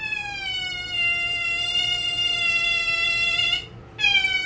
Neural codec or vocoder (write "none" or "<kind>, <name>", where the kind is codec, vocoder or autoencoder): none